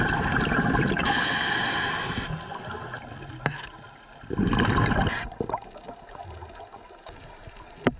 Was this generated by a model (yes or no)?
no